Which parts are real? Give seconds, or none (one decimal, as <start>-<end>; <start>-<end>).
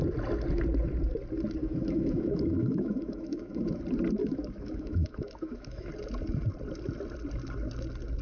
0.0-1.6; 3.8-4.2; 5.9-8.2